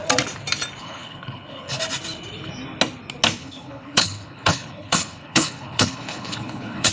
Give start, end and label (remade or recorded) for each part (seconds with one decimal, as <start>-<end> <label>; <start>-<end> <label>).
0.0-0.8 recorded; 0.8-1.8 remade; 1.8-3.4 recorded; 3.4-6.9 remade